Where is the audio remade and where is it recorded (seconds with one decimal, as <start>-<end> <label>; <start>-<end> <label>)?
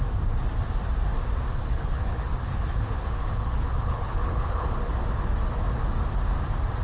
0.0-1.5 recorded; 1.5-4.9 remade; 4.9-6.8 recorded